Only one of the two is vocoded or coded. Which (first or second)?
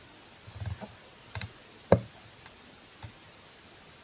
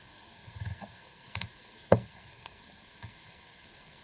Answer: second